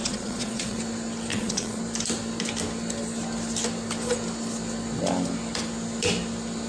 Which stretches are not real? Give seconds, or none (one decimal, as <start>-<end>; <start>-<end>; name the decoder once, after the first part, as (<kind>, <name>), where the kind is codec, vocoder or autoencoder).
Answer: 0.0-0.8 (vocoder, Vocos); 1.3-1.8